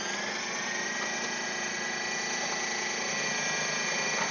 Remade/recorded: recorded